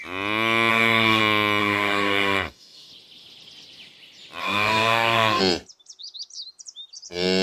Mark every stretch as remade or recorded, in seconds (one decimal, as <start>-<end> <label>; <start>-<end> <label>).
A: 0.0-0.7 recorded; 0.7-1.2 remade; 1.2-1.6 recorded; 1.6-2.9 remade; 2.9-4.4 recorded; 4.4-5.4 remade; 5.4-7.4 recorded